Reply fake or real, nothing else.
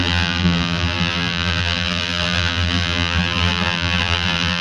fake